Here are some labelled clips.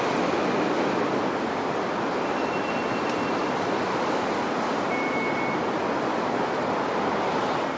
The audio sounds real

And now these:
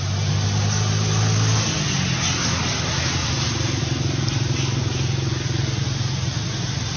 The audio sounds real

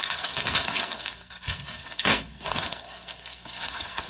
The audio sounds fake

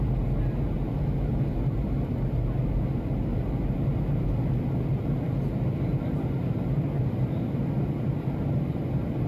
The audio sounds real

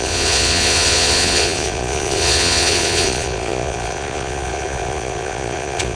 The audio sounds fake